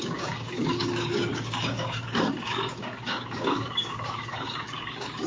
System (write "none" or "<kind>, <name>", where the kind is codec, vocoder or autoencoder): codec, DAC